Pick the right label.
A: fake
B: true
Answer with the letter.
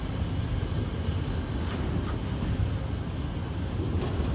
B